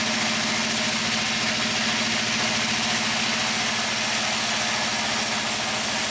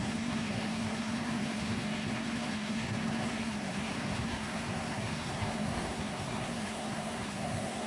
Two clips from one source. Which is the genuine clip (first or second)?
first